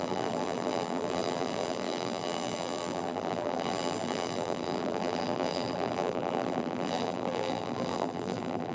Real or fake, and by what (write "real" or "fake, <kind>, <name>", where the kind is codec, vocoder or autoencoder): fake, vocoder, BigVGAN v2